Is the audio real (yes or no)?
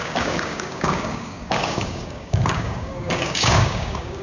no